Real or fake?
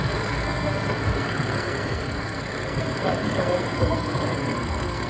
fake